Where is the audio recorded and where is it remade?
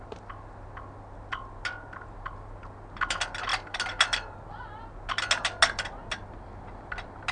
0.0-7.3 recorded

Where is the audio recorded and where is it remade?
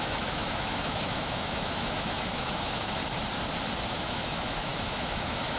0.0-3.0 remade; 3.0-3.9 recorded; 3.9-5.6 remade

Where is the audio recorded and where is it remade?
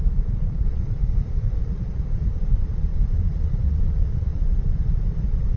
0.0-5.6 remade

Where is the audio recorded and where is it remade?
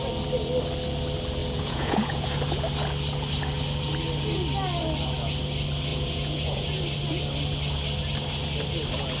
0.0-1.4 recorded; 1.4-2.4 remade; 2.4-5.9 recorded; 5.9-6.8 remade; 6.8-9.2 recorded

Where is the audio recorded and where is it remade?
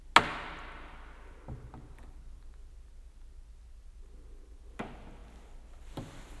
0.0-6.4 recorded